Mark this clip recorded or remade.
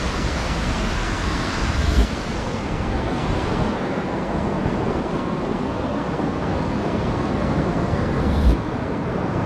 remade